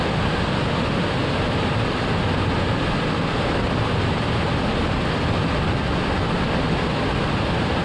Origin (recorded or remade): recorded